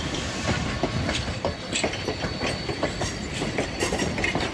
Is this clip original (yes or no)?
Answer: yes